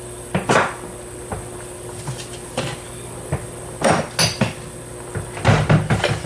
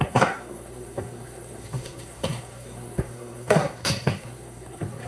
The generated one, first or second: second